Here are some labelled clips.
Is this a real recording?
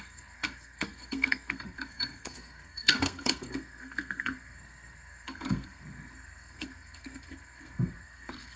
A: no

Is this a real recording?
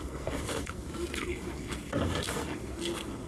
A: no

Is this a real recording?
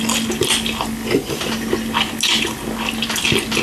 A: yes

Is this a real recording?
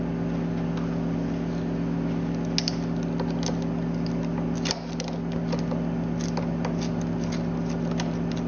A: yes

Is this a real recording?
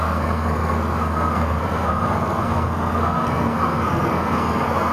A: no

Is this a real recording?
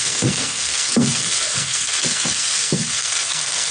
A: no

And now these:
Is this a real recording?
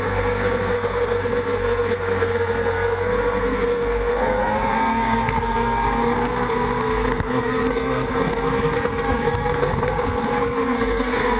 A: no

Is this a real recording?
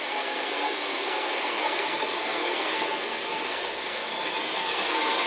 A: no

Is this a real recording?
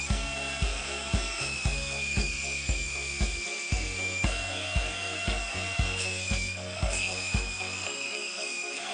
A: no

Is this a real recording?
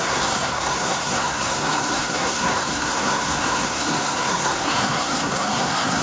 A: no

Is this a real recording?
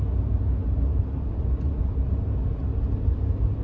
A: yes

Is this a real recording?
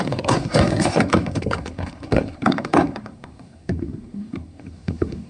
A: no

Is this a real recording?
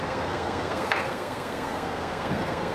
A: no